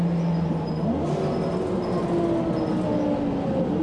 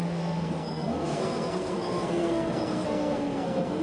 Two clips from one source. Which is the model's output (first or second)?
second